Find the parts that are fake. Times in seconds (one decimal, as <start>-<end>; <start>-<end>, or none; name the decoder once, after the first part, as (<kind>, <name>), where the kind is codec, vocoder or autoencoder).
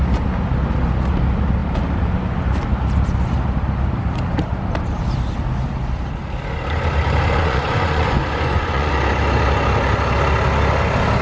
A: 7.4-8.9 (vocoder, Vocos)